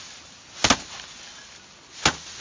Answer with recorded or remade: recorded